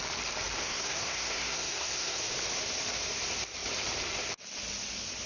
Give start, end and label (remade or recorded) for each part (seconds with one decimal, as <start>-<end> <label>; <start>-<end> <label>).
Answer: 0.0-0.6 recorded; 0.6-2.2 remade; 2.2-5.3 recorded